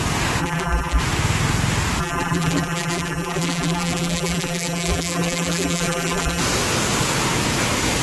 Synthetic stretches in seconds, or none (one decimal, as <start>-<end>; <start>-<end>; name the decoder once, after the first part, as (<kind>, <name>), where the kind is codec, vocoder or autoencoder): 0.4-1.0 (vocoder, BigVGAN v2); 2.0-6.4